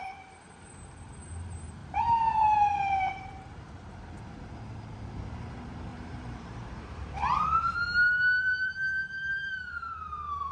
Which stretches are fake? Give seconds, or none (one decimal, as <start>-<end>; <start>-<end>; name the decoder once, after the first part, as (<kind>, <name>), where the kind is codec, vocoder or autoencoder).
1.8-4.2 (vocoder, BigVGAN v2); 5.9-10.5